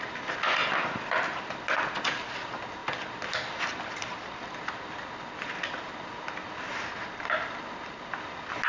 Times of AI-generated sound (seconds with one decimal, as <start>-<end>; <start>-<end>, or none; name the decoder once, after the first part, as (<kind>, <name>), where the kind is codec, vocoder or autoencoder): 0.6-2.1 (vocoder, BigVGAN v2); 2.8-5.1